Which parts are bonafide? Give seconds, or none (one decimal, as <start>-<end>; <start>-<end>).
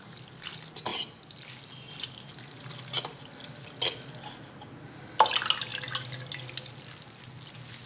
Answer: 0.0-7.9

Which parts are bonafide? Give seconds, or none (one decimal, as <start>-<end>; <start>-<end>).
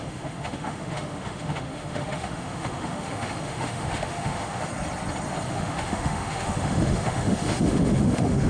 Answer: 4.7-5.5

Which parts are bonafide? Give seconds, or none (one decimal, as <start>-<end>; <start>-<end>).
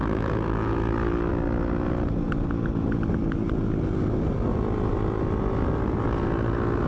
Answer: 0.9-6.9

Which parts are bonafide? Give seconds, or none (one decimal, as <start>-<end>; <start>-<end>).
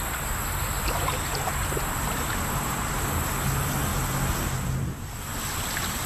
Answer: 0.0-6.1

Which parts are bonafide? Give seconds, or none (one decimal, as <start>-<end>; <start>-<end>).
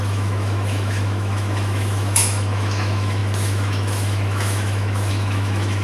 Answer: none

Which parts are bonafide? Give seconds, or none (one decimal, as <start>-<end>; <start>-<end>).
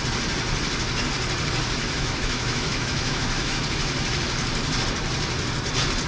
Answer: 0.0-1.8; 3.6-6.1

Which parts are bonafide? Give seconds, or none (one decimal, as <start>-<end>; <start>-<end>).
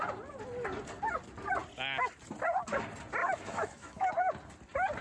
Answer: 0.0-3.2; 4.1-5.0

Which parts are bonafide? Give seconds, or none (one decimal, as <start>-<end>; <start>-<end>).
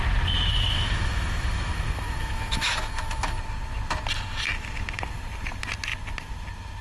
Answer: 0.0-0.5; 3.4-6.8